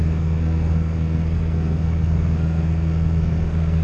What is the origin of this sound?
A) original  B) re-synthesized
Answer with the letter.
B